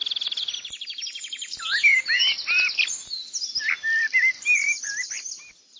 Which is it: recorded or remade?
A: recorded